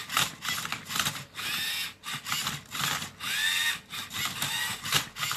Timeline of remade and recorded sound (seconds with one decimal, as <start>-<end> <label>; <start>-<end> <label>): 0.0-5.4 recorded